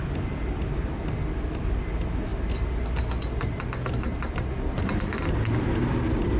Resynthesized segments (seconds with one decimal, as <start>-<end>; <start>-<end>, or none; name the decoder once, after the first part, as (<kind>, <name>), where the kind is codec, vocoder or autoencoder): none